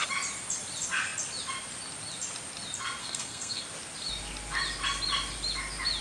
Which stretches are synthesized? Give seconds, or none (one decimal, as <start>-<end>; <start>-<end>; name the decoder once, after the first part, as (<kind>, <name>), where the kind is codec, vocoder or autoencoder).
3.0-3.6 (codec, SNAC)